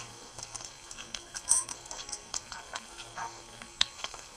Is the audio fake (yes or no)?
yes